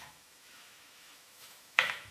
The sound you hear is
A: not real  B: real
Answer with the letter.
A